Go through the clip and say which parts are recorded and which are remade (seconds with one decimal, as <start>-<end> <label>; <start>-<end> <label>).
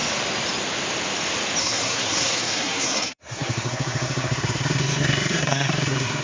0.0-1.6 recorded; 1.6-6.2 remade